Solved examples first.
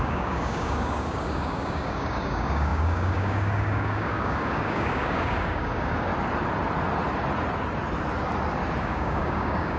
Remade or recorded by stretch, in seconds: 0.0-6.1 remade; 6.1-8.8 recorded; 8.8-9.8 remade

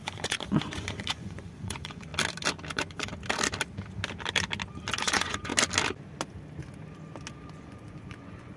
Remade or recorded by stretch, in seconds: 0.0-2.1 remade; 2.1-2.7 recorded; 2.7-3.1 remade; 3.1-5.0 recorded; 5.0-5.5 remade; 5.5-7.5 recorded; 7.5-8.6 remade

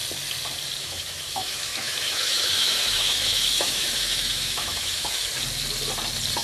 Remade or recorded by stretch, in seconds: 0.0-0.8 recorded; 0.8-5.3 remade; 5.3-6.4 recorded

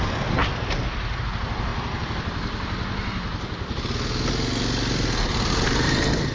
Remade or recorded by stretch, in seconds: 0.0-6.3 recorded

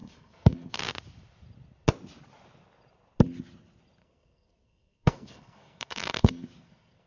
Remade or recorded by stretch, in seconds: 0.0-0.8 remade; 0.8-4.0 recorded; 4.0-7.1 remade

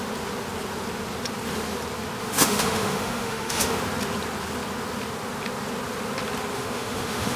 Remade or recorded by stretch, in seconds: 0.0-2.2 recorded; 2.2-3.7 remade; 3.7-6.5 recorded; 6.5-7.4 remade